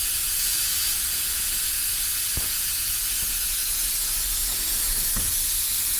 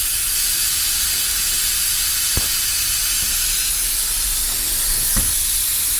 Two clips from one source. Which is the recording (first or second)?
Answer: second